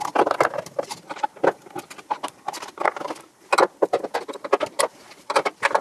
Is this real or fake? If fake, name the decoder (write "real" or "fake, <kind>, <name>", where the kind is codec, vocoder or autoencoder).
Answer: real